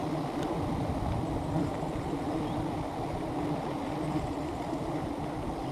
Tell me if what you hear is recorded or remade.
remade